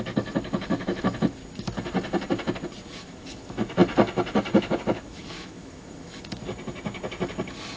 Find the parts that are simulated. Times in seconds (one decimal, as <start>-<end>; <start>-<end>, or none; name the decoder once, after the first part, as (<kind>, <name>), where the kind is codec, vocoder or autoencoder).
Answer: 0.0-1.4 (autoencoder, DAC-VAE); 3.0-3.8; 4.6-6.4